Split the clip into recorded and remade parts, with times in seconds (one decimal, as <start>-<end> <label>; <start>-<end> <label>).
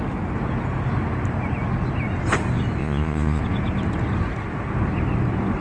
0.0-2.8 recorded; 2.8-3.4 remade; 3.4-5.6 recorded